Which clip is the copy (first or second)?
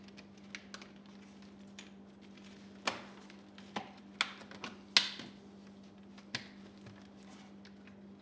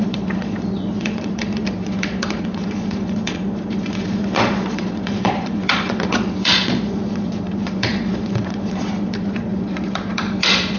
second